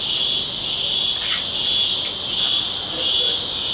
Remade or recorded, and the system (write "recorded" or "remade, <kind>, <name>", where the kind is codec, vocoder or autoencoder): recorded